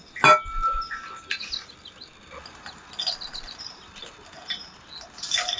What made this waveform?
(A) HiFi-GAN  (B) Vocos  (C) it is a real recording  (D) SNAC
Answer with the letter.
C